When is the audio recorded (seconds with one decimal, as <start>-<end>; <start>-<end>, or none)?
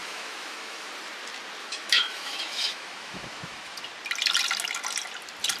0.9-1.6; 3.8-5.6